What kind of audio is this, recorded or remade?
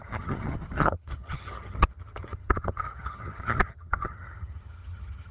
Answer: remade